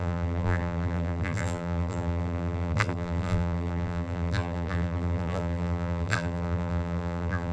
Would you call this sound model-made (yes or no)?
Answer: yes